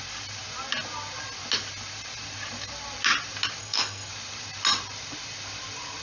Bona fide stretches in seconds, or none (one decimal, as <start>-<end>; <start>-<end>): 0.0-3.6; 4.1-6.0